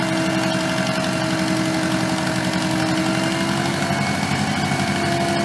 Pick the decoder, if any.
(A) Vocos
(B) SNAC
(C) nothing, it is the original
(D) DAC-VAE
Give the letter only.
C